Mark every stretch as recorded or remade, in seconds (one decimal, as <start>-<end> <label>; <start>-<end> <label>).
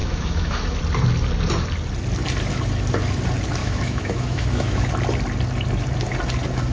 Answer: 0.0-0.8 remade; 0.8-3.6 recorded; 3.6-4.9 remade; 4.9-6.7 recorded